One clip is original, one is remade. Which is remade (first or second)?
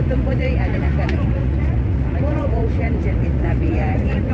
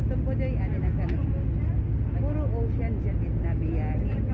first